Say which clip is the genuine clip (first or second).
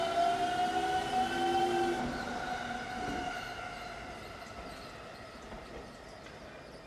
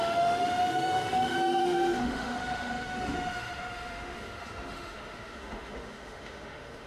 first